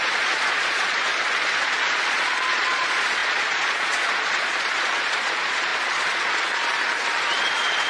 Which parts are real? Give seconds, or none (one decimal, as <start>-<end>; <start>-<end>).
1.1-1.6; 6.7-7.4